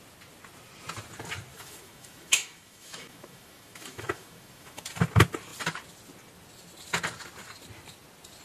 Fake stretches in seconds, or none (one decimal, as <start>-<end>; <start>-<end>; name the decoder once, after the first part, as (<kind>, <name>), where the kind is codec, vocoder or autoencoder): 1.5-4.8 (autoencoder, DAC-VAE)